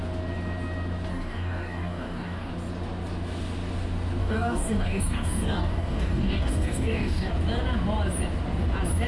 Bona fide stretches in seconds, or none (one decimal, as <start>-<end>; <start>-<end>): 0.0-1.1; 2.5-4.2; 7.3-9.1